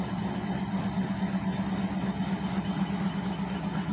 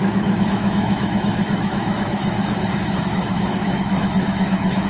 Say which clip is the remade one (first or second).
second